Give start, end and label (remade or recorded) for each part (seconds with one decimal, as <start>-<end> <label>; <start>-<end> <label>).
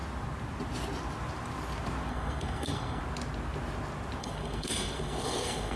0.0-2.1 recorded; 2.1-3.0 remade; 3.0-4.2 recorded; 4.2-5.8 remade